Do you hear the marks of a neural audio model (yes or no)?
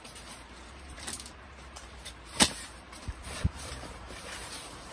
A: yes